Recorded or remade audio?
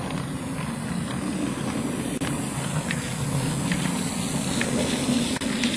recorded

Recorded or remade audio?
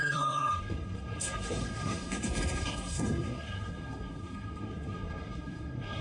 remade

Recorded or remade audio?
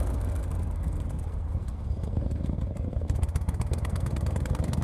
remade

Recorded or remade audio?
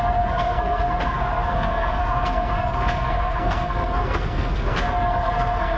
remade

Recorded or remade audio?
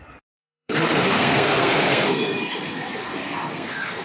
remade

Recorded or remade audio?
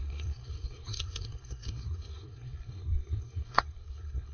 remade